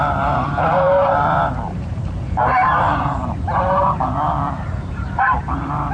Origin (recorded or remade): remade